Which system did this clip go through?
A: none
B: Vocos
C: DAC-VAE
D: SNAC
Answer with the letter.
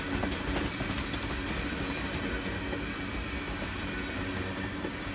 A